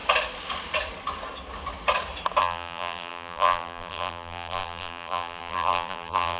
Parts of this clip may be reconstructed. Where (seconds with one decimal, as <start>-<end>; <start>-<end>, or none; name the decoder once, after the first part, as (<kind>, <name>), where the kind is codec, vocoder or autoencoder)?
2.4-6.4 (vocoder, BigVGAN v2)